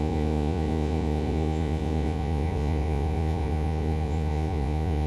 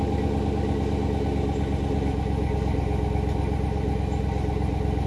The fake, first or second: first